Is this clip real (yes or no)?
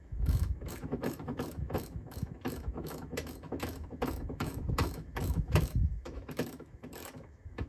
no